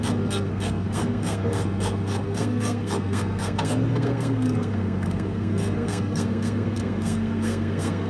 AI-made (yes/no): yes